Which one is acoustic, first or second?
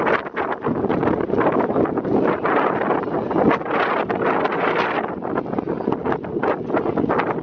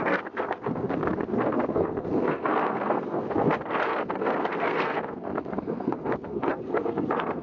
first